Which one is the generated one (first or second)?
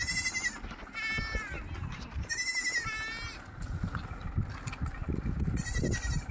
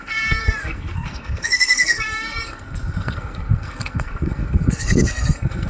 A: second